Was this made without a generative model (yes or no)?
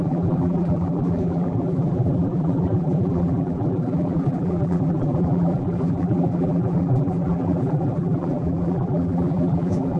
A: no